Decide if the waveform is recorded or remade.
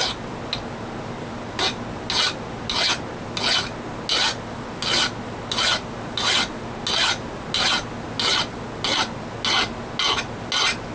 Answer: recorded